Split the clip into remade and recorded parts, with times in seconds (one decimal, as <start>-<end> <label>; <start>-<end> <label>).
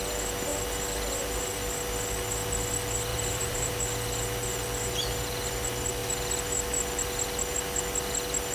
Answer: 0.0-3.1 recorded; 3.1-3.7 remade; 3.7-8.5 recorded